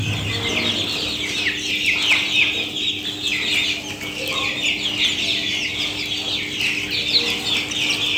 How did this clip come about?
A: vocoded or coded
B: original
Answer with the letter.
B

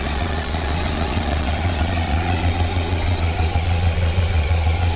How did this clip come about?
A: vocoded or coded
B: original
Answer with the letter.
A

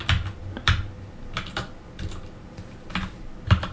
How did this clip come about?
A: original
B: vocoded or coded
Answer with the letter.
A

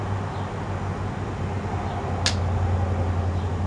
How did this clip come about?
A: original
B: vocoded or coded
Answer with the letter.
A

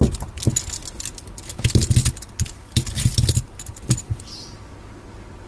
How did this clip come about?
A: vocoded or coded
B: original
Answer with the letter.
B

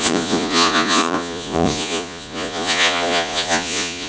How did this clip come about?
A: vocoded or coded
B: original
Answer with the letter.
A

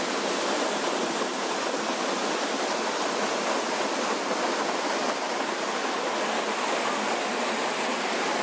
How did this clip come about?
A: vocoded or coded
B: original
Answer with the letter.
B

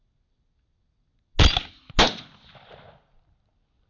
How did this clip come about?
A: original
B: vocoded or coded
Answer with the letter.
A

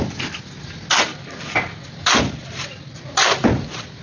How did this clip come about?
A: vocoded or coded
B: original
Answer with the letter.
B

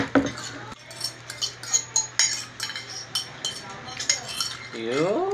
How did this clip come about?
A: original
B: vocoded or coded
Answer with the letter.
A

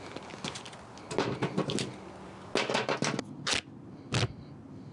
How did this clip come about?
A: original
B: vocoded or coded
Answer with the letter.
A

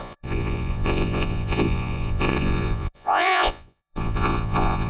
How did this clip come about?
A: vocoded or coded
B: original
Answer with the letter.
A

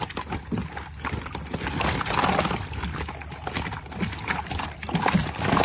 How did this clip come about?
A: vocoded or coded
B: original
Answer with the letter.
B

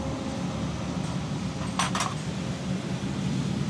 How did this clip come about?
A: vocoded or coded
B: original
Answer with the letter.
B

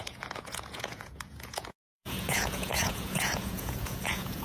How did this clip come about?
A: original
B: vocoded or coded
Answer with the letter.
B